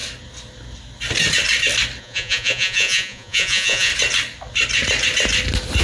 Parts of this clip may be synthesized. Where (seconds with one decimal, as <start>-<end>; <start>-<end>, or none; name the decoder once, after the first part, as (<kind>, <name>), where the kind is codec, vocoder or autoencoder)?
2.0-3.9 (vocoder, Vocos)